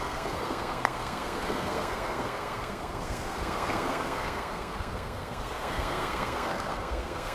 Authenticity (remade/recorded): remade